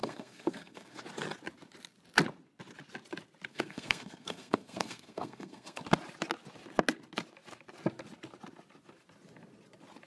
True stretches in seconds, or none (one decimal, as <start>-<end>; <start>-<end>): 1.0-3.5; 5.8-10.1